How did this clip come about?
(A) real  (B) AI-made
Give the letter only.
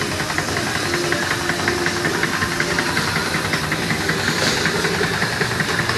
A